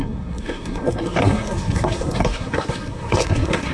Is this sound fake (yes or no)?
yes